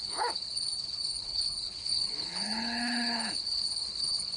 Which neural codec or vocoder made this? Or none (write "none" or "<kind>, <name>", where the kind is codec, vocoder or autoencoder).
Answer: codec, HILCodec